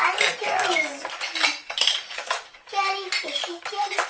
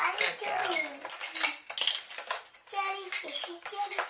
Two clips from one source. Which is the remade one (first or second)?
first